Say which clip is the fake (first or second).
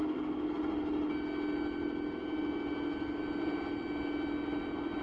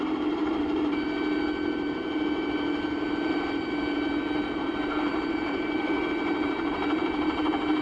second